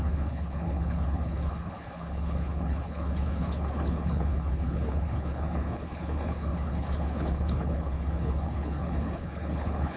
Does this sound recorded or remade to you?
remade